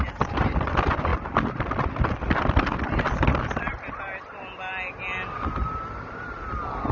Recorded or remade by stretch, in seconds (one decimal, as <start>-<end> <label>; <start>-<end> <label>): 0.0-6.9 recorded